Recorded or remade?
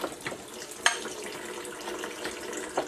recorded